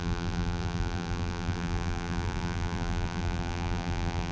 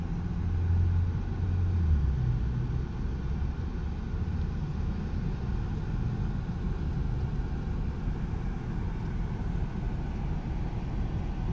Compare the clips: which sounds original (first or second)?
second